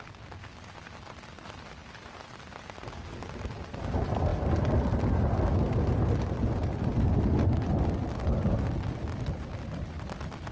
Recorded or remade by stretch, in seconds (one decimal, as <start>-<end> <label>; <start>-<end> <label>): 0.0-10.5 recorded